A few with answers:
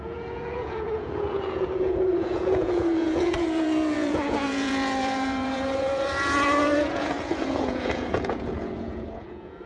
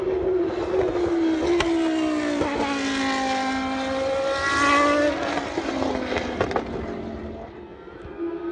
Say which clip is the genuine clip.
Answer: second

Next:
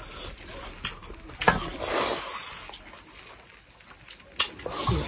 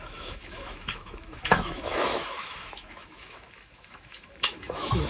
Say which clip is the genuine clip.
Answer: first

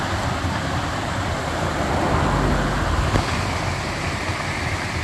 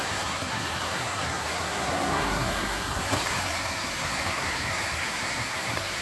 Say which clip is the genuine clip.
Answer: first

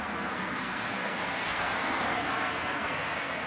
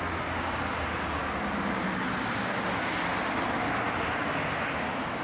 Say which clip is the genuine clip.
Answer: second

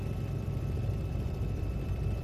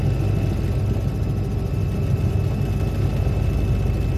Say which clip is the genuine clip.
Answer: second